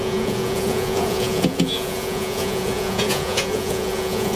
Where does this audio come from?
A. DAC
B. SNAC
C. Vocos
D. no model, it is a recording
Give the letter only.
C